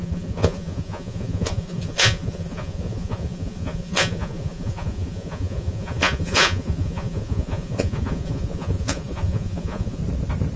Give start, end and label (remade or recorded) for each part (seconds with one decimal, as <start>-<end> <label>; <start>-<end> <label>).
0.0-10.0 remade; 10.0-10.6 recorded